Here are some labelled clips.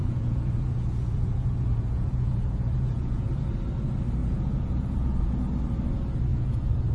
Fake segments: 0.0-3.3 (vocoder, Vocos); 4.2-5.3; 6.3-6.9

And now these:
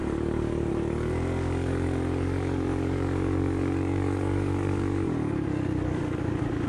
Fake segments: 0.0-6.7 (codec, DAC)